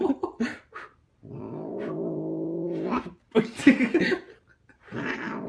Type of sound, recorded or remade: recorded